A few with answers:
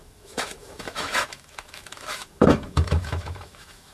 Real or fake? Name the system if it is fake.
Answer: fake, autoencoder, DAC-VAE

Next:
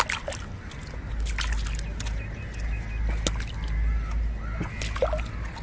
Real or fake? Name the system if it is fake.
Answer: real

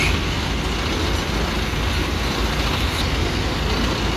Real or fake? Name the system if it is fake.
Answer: real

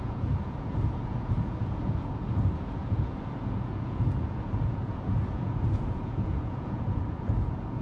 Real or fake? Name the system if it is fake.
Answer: fake, vocoder, Vocos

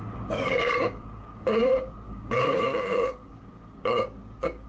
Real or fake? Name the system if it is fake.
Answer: fake, codec, DAC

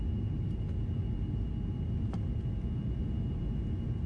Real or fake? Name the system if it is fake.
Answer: fake, vocoder, BigVGAN v2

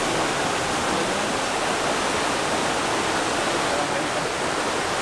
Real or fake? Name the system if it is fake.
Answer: real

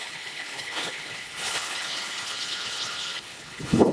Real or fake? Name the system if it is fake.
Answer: fake, codec, HILCodec